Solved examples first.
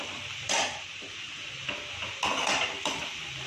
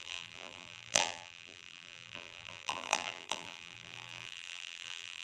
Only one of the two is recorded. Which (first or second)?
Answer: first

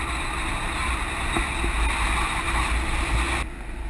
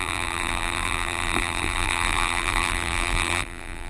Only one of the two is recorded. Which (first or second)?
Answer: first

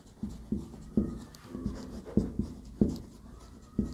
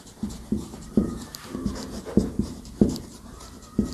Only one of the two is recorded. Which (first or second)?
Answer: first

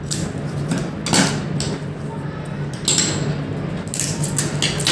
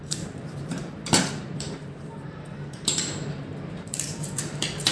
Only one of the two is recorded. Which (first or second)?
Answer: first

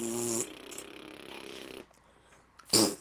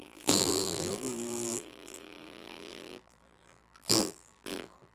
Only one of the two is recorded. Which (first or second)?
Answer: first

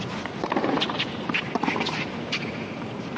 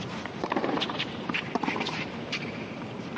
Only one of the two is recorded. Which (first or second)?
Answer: first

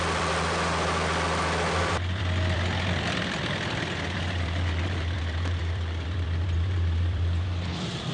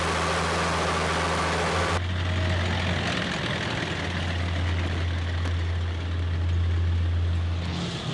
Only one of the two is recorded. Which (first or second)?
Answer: second